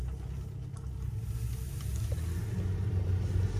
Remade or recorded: recorded